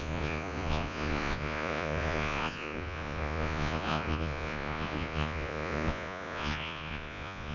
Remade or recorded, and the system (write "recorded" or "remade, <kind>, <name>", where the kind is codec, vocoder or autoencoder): remade, vocoder, Vocos